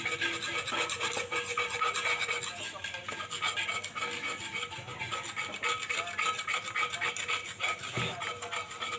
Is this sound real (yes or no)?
yes